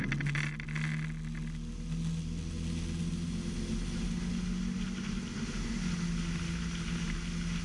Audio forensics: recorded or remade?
recorded